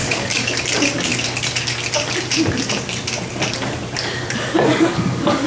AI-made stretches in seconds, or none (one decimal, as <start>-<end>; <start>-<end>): 0.0-0.5; 4.7-5.5